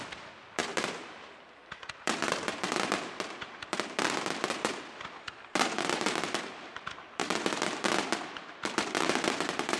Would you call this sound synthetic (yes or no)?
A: yes